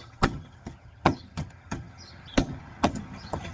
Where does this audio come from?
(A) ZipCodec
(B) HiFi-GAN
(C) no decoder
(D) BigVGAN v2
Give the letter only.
B